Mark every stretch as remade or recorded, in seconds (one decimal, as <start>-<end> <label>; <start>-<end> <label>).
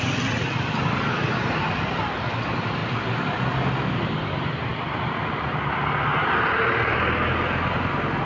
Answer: 0.0-8.3 recorded